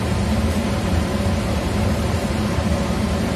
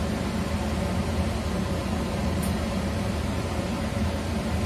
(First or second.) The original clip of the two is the second